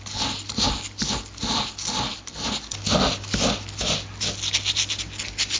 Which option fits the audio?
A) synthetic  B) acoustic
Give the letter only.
B